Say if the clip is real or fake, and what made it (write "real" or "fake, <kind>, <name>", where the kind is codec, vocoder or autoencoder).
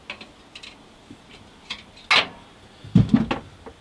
real